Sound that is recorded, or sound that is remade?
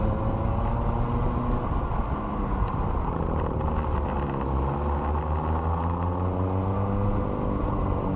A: recorded